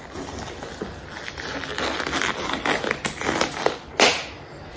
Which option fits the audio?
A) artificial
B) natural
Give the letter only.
B